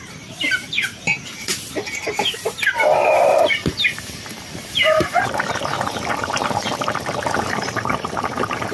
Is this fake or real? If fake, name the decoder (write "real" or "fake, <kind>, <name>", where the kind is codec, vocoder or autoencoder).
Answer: fake, vocoder, BigVGAN v2